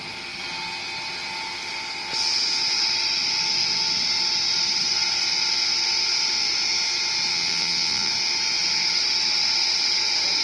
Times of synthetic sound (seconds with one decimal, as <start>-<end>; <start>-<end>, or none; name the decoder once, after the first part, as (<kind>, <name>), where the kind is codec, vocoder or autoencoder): 7.3-8.1 (vocoder, Vocos)